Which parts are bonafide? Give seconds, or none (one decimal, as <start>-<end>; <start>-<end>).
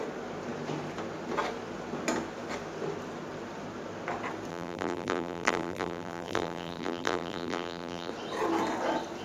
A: 0.0-4.5; 8.1-9.2